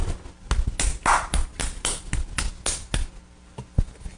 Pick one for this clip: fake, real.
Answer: real